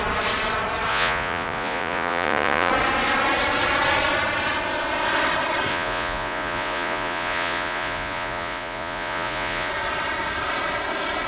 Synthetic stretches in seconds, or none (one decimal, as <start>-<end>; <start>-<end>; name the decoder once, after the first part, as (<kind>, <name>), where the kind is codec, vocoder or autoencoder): 0.9-2.7 (vocoder, Vocos); 5.7-9.7